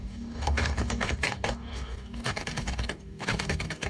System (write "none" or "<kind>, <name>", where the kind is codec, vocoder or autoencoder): codec, DAC